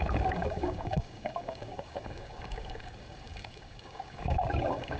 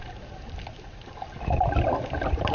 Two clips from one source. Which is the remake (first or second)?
first